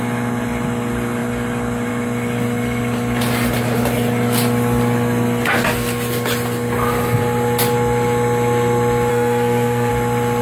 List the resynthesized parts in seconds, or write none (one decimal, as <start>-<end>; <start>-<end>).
9.1-9.9